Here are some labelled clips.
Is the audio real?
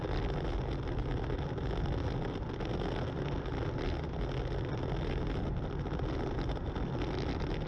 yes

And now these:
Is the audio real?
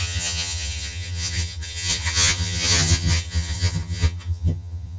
no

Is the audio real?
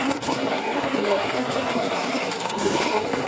no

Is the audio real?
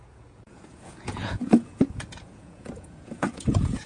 no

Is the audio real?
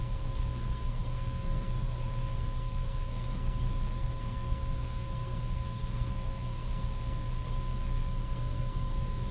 no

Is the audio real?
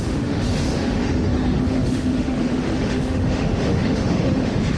no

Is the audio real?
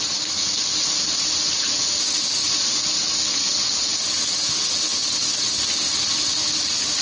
yes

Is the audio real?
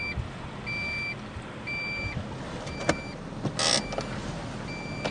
yes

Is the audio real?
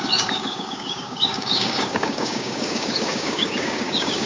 no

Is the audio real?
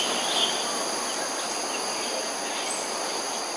yes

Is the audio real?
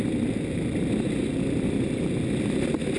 yes